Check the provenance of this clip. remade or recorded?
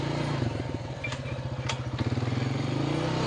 recorded